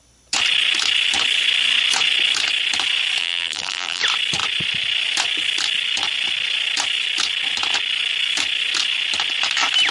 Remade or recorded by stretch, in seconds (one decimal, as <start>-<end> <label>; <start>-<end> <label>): 0.0-3.2 recorded; 3.2-4.0 remade; 4.0-9.9 recorded